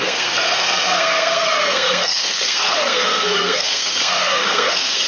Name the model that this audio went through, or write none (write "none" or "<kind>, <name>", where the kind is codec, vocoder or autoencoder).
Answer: codec, SNAC